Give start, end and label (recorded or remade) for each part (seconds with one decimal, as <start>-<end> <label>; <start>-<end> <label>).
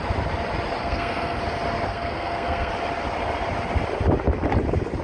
0.0-0.8 recorded; 0.8-1.4 remade; 1.4-1.9 recorded; 1.9-2.7 remade; 2.7-5.0 recorded